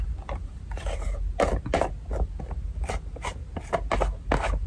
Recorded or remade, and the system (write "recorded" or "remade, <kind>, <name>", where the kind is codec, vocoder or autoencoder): recorded